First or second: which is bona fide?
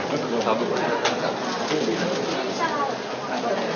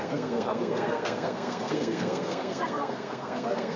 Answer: first